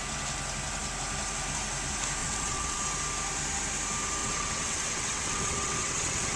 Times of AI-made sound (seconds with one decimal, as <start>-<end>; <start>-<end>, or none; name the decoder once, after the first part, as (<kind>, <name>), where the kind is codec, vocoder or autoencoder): 2.2-2.8 (vocoder, WaveNeXt); 4.2-6.4